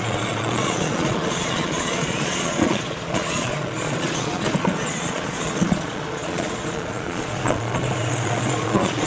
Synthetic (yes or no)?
yes